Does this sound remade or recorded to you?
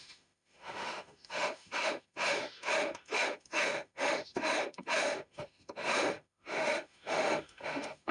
remade